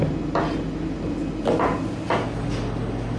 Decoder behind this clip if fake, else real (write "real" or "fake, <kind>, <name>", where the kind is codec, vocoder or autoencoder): real